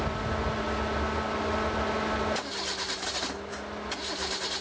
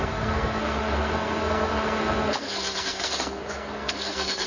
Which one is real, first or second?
first